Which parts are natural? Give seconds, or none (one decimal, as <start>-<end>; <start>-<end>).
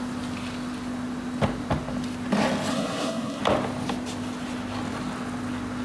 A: 0.0-2.7; 3.4-5.8